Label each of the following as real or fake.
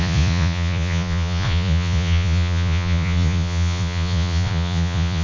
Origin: fake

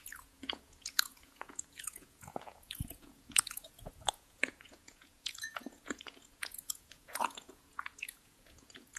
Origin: fake